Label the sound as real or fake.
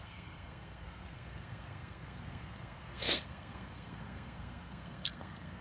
fake